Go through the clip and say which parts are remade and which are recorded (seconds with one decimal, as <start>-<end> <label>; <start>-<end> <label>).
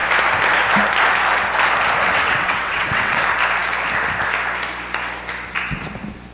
0.0-2.1 recorded; 2.1-3.2 remade; 3.2-6.3 recorded